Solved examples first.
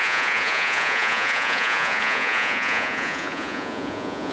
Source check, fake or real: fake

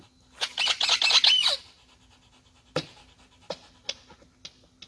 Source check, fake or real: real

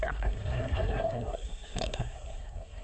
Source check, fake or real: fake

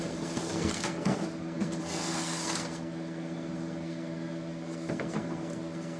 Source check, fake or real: fake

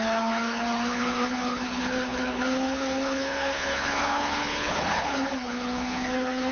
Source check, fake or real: fake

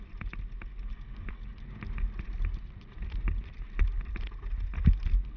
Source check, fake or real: real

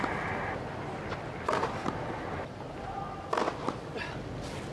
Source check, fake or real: real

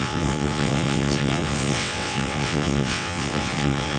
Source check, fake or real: fake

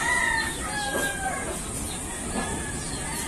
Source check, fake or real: fake